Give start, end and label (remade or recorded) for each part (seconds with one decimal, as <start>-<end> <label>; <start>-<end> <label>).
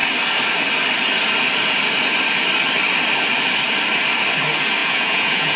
0.0-4.8 recorded; 4.8-5.6 remade